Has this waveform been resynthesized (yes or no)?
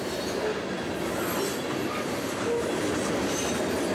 no